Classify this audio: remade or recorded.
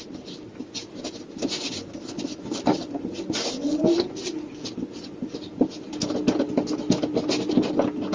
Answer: recorded